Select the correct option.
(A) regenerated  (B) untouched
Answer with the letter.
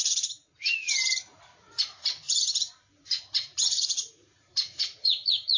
A